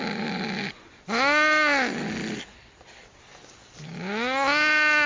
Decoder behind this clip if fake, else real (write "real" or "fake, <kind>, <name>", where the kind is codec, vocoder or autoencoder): real